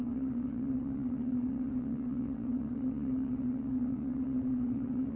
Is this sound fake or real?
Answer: fake